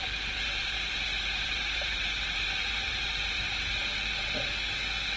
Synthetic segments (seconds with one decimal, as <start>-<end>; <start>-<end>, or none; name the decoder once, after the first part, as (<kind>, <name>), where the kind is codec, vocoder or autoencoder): 1.1-3.9 (vocoder, BigVGAN v2)